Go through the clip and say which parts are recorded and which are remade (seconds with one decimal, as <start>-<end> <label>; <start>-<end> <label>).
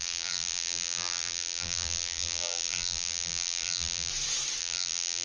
0.0-4.1 remade; 4.1-4.6 recorded; 4.6-5.2 remade